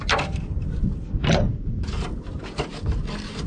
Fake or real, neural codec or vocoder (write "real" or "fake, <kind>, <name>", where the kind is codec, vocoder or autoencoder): real